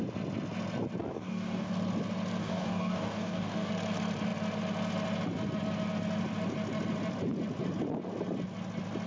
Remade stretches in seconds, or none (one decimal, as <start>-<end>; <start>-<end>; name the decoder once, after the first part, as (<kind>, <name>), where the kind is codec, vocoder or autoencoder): 1.1-1.7 (codec, DAC); 2.4-3.7

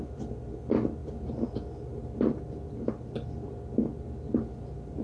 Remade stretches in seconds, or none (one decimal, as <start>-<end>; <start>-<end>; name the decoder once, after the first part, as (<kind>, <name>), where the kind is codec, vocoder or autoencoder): none

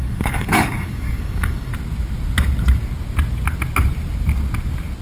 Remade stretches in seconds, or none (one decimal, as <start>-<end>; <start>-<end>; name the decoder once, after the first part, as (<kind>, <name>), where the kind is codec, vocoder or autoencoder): 0.0-1.7 (codec, DAC)

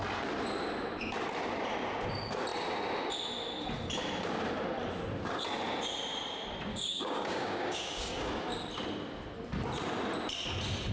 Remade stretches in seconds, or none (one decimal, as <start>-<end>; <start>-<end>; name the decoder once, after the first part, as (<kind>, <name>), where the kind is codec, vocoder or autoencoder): 6.7-8.3 (codec, DAC)

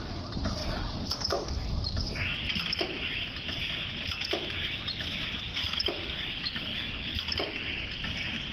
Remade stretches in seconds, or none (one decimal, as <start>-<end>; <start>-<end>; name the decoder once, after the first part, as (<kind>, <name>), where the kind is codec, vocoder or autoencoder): 0.6-1.5 (codec, DAC); 5.5-7.6

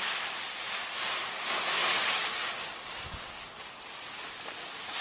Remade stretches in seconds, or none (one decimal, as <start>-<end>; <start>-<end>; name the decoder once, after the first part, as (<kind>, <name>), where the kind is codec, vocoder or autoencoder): 1.8-3.5 (codec, DAC)

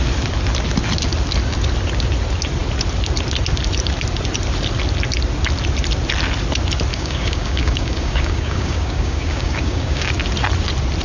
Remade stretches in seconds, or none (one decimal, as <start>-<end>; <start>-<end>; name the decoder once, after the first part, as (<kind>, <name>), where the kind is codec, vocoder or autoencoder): 6.9-10.1 (codec, DAC)

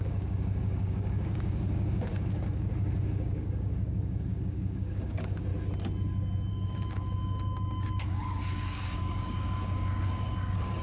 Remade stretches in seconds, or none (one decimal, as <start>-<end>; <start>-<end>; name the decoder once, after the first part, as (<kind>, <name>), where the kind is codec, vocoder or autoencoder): 0.0-5.5 (codec, DAC); 6.5-10.8